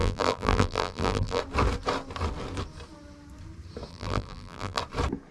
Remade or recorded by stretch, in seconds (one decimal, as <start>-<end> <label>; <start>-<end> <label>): 0.0-1.4 remade; 1.4-3.9 recorded; 3.9-4.8 remade; 4.8-5.3 recorded